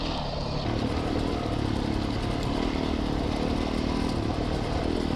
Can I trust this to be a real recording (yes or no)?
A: yes